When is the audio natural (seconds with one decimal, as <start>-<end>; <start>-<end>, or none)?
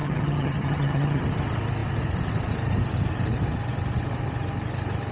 1.2-5.1